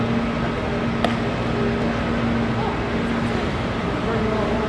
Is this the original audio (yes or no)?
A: yes